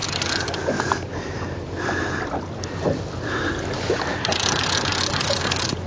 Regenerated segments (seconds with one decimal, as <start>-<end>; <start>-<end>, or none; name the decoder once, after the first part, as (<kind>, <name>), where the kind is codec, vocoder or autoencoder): 0.0-4.1 (vocoder, BigVGAN v2); 5.1-5.9